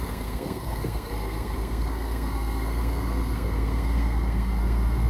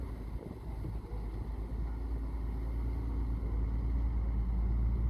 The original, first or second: second